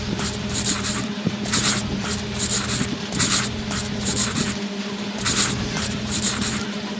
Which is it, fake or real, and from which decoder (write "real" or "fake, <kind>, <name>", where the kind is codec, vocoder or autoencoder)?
fake, vocoder, BigVGAN v2